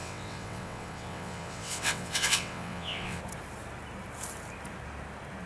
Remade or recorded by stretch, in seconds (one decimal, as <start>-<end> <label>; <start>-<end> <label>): 0.0-3.2 remade; 3.2-5.5 recorded